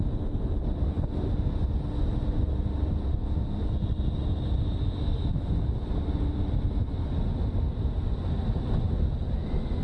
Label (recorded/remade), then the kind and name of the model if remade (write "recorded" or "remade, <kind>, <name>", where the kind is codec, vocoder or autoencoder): recorded